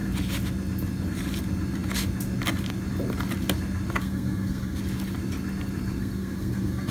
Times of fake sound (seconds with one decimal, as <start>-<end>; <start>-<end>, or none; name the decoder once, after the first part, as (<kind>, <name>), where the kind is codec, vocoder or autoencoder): 4.0-4.8 (codec, SNAC); 6.0-6.9

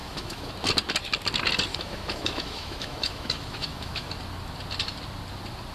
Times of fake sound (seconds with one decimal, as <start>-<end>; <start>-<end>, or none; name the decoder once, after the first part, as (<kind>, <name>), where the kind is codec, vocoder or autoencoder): 0.0-0.5 (autoencoder, DAC-VAE); 1.7-4.1